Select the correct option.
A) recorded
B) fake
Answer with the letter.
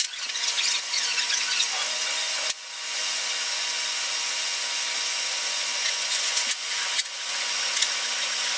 B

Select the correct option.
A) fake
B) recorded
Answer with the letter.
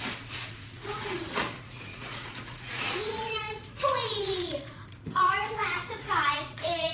A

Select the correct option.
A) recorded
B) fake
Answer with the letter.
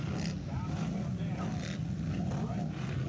A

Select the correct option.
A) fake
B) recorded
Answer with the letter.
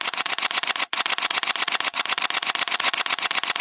A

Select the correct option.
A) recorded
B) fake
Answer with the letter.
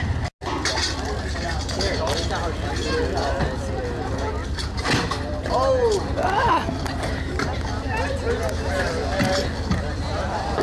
A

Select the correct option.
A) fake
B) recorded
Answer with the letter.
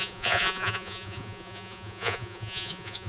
A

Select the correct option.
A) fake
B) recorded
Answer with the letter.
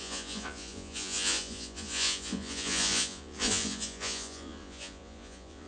A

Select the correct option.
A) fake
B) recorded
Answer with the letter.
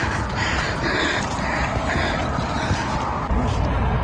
B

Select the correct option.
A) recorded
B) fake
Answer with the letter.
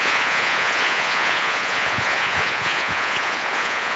B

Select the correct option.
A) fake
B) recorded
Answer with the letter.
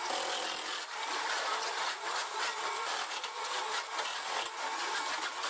B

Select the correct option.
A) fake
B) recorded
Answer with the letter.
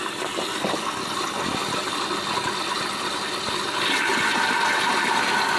B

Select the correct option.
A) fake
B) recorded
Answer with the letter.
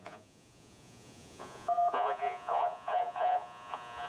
A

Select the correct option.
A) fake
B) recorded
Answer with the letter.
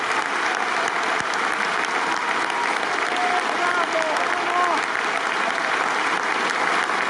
B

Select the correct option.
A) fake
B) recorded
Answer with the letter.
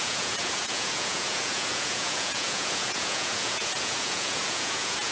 A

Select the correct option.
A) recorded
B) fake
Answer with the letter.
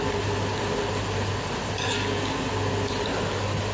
A